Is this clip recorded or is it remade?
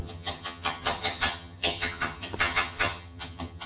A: remade